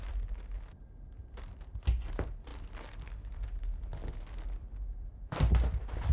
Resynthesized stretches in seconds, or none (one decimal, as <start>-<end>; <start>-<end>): none